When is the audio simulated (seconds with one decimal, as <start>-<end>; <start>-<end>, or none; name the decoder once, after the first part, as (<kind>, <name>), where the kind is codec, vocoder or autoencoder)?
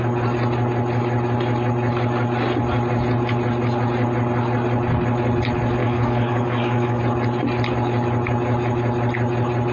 5.8-7.0 (codec, DAC)